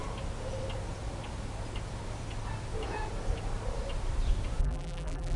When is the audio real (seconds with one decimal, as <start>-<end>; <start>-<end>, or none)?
0.0-4.6